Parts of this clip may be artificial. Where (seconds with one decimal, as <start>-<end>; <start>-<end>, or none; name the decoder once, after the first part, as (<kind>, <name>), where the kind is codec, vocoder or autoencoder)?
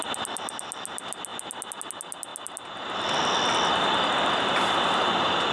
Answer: none